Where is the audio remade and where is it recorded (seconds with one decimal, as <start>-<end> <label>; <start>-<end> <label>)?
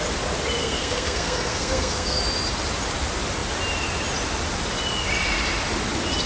0.0-0.6 recorded; 0.6-2.2 remade; 2.2-6.3 recorded